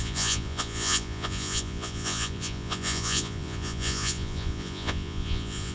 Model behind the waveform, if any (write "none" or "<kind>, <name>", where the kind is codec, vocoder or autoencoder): vocoder, Vocos